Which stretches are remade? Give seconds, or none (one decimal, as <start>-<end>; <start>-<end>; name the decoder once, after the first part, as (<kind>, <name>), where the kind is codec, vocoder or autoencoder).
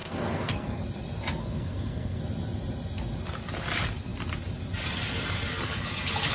0.0-0.8 (codec, SNAC); 1.4-2.2